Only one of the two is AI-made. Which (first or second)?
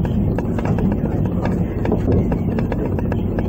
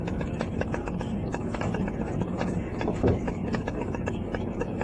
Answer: second